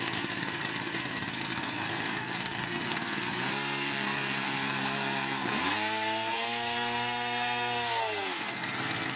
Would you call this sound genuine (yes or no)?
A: no